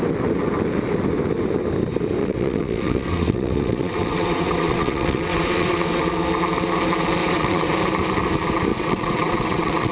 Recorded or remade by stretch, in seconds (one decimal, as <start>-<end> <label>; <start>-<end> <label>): 0.0-2.2 recorded; 2.2-6.0 remade; 6.0-7.2 recorded; 7.2-7.7 remade; 7.7-8.7 recorded; 8.7-9.9 remade

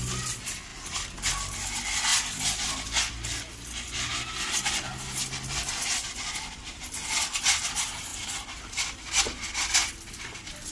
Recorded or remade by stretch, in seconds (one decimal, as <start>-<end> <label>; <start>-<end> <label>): 0.0-10.7 recorded

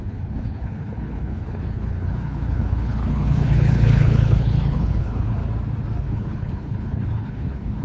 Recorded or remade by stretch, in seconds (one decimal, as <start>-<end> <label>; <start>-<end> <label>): 0.0-5.4 remade; 5.4-6.0 recorded; 6.0-7.8 remade

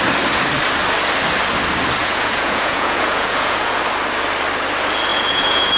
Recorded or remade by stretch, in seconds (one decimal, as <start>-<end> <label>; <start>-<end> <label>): 0.0-2.0 recorded; 2.0-3.8 remade; 3.8-5.1 recorded; 5.1-5.8 remade

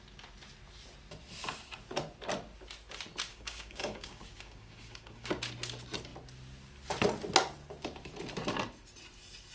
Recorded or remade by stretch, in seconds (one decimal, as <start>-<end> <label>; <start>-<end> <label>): 0.0-3.3 recorded; 3.3-5.3 remade; 5.3-9.5 recorded

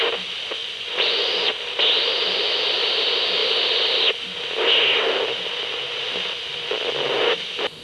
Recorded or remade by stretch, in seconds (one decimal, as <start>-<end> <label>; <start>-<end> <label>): 0.0-0.6 recorded; 0.6-1.5 remade; 1.5-7.8 recorded